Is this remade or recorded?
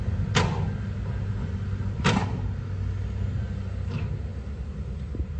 recorded